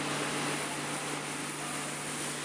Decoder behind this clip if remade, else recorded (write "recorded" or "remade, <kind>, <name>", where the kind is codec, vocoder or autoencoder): recorded